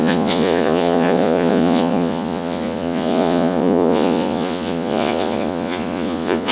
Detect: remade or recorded remade